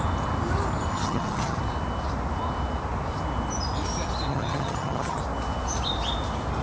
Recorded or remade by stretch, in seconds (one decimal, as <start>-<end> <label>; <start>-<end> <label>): 0.0-0.9 recorded; 0.9-1.6 remade; 1.6-4.3 recorded; 4.3-5.2 remade; 5.2-6.6 recorded